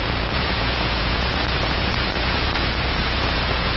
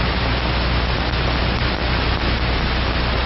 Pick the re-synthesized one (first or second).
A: first